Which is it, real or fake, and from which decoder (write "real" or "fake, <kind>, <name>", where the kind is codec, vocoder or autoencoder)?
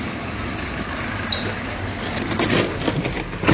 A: real